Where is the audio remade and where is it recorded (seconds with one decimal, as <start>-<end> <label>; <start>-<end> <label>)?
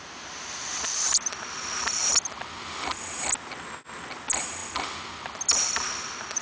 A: 0.0-6.4 recorded